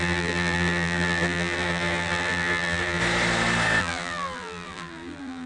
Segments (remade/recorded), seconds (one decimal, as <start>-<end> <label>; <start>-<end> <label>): 0.0-3.0 remade; 3.0-3.8 recorded; 3.8-5.5 remade